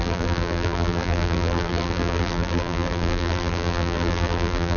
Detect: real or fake fake